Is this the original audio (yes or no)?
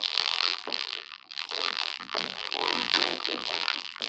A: no